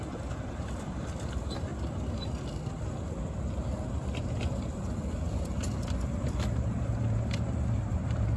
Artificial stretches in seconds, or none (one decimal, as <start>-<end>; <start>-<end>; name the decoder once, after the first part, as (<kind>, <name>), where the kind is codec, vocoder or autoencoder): 0.0-1.7 (vocoder, BigVGAN v2); 6.0-8.4